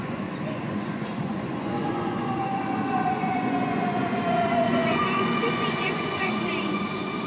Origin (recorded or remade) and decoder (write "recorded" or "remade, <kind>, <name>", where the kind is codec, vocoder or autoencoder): remade, vocoder, Vocos